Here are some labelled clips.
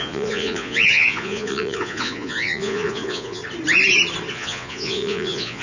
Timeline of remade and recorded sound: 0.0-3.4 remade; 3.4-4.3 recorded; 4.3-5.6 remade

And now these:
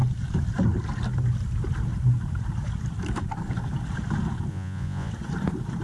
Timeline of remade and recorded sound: 0.0-4.5 recorded; 4.5-5.1 remade; 5.1-5.8 recorded

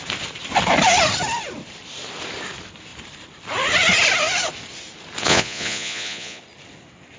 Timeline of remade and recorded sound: 0.0-5.2 recorded; 5.2-6.4 remade; 6.4-7.2 recorded

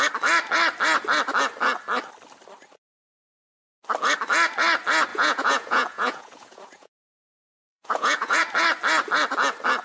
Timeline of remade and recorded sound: 0.0-5.1 recorded; 5.1-8.4 remade; 8.4-9.8 recorded